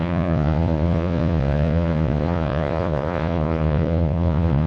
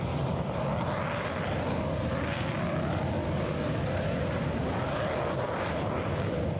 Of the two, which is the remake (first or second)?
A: first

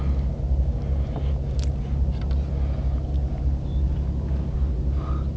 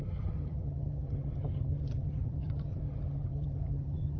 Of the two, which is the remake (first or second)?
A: second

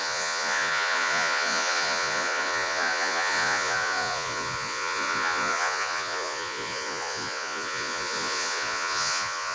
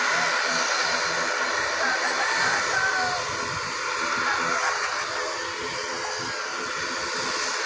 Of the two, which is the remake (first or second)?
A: first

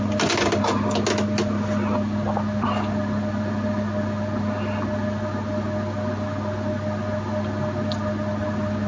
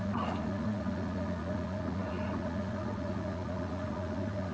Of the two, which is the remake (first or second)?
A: second